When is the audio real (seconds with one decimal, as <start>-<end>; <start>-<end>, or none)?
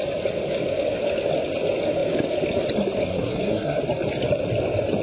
0.0-3.1; 3.8-5.0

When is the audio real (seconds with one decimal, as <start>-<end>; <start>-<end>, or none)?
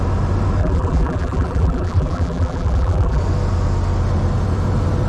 0.0-0.6; 3.2-5.1